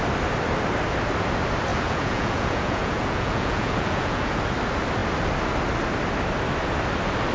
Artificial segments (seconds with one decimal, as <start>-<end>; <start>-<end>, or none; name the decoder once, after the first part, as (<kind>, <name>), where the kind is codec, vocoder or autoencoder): 1.7-4.4 (vocoder, Vocos)